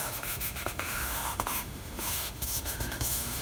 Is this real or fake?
fake